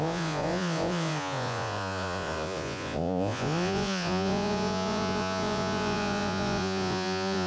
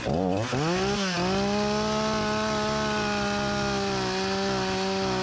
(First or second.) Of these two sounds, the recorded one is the second